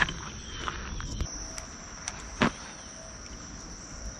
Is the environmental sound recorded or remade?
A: recorded